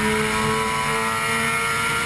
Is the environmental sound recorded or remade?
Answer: recorded